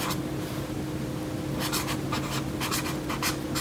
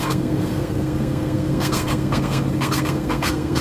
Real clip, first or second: first